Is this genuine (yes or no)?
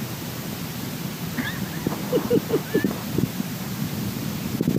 yes